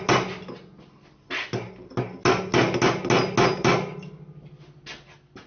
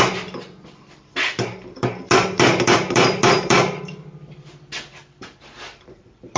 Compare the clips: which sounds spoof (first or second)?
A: second